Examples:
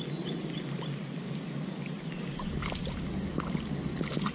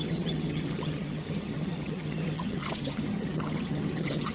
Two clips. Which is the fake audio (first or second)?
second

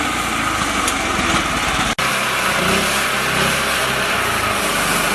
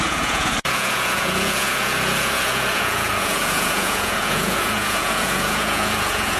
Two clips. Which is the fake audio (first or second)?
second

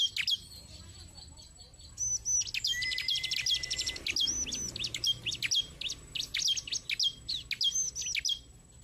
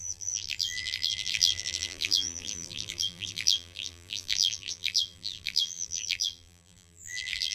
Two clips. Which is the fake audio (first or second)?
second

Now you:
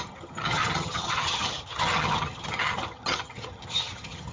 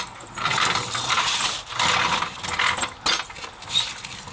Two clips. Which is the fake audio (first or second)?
first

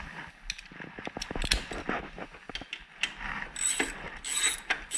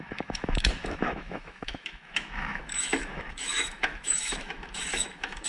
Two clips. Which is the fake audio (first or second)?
second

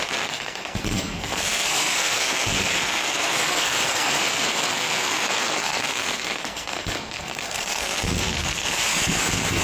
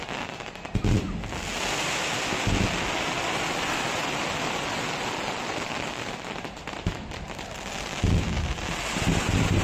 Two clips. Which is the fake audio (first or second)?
first